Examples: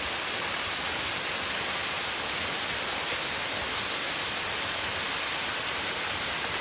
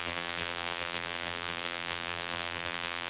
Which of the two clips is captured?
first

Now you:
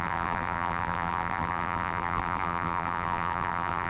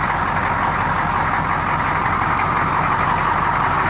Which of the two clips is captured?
second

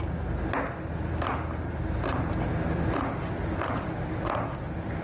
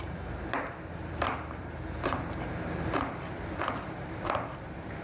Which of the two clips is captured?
first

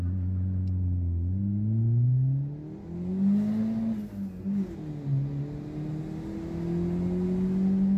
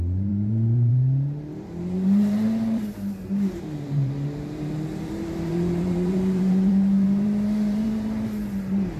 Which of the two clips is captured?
first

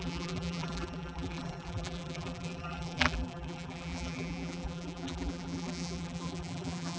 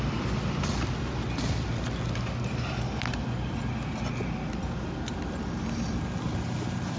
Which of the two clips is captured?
second